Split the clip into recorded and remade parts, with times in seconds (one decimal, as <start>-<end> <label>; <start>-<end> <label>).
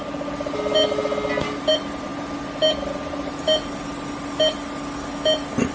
0.0-5.7 recorded